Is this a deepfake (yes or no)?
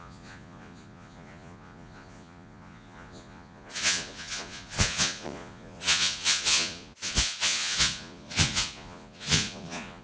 yes